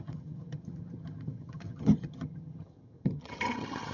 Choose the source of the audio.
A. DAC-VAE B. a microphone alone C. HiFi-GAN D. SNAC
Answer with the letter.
C